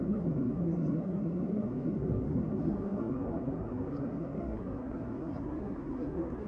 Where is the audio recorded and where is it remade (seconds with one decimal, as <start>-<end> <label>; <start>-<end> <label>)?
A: 0.0-6.5 remade